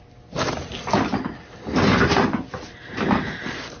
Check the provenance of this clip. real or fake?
real